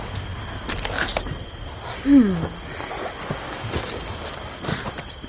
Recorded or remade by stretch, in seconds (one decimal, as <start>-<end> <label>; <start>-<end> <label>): 0.0-5.3 recorded

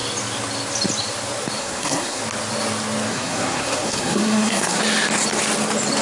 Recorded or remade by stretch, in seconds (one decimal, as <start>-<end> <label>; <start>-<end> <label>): 0.0-1.6 recorded; 1.6-2.2 remade; 2.2-3.1 recorded; 3.1-4.8 remade; 4.8-6.0 recorded

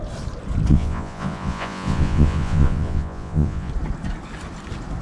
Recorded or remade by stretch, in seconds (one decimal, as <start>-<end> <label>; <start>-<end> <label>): 0.0-0.7 recorded; 0.7-3.7 remade; 3.7-5.0 recorded

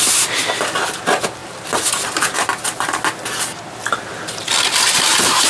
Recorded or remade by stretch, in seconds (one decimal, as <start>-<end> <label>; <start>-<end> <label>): 0.0-5.5 recorded

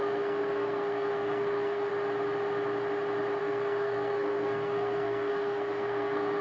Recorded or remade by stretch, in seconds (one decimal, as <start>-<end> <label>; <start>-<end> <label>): 0.0-1.9 remade; 1.9-3.4 recorded; 3.4-6.4 remade

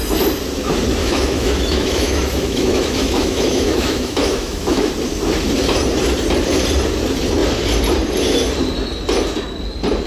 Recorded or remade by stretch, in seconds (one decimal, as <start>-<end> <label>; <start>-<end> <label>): 0.0-1.0 recorded; 1.0-4.9 remade; 4.9-10.1 recorded